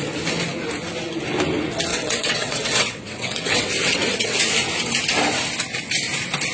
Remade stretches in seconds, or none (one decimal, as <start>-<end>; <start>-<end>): 1.9-4.4